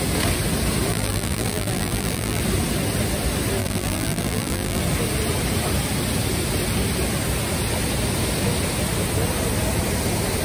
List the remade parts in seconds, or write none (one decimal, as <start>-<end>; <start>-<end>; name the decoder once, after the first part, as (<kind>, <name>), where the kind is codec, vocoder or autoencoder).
0.9-2.4 (vocoder, BigVGAN v2); 3.6-4.8